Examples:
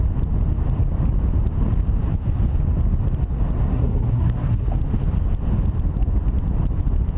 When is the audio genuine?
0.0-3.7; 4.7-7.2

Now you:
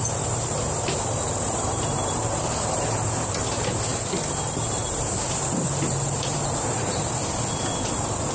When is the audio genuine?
7.2-7.9

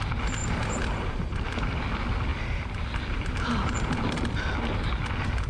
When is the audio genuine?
0.0-0.4; 1.8-2.3; 4.5-5.5

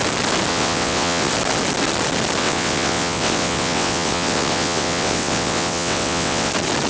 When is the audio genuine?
0.0-0.5; 1.3-2.4; 6.5-6.9

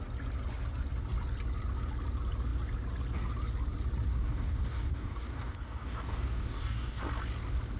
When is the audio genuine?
0.0-4.1; 7.0-7.8

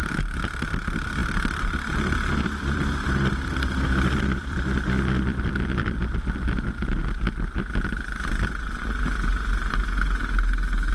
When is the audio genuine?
7.0-10.9